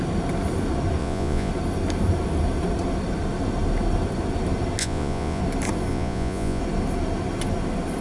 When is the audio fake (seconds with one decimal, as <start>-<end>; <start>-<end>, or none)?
1.0-1.5; 4.8-5.4; 5.9-6.6